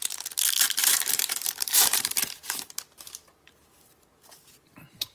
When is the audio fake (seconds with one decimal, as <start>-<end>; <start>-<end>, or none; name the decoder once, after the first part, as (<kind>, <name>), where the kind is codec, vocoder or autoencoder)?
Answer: 0.8-3.9 (vocoder, BigVGAN v2)